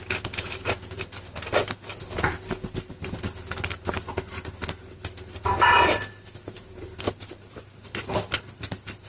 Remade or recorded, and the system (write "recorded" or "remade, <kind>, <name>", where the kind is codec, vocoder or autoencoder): recorded